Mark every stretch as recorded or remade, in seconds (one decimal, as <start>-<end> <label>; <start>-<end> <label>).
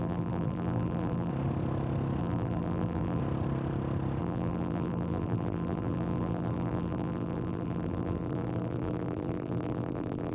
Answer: 0.0-1.3 remade; 1.3-2.2 recorded; 2.2-3.2 remade; 3.2-4.2 recorded; 4.2-10.3 remade